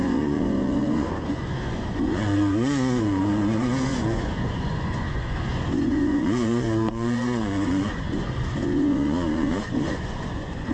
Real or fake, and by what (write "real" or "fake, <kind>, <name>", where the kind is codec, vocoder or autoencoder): fake, vocoder, Vocos